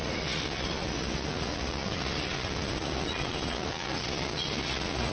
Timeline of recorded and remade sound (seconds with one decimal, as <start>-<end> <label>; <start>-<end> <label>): 0.0-5.1 remade